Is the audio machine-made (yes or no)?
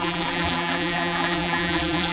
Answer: yes